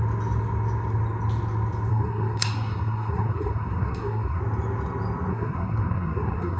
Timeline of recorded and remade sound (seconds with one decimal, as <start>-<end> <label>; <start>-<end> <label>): 0.0-1.9 recorded; 1.9-4.4 remade; 4.4-5.3 recorded; 5.3-6.6 remade